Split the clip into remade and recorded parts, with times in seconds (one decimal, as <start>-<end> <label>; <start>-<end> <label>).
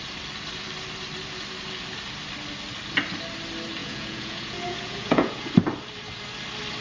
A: 0.0-3.8 recorded; 3.8-5.5 remade; 5.5-6.8 recorded